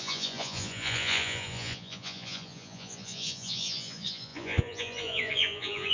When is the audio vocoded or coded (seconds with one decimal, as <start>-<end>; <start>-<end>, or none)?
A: 0.0-5.9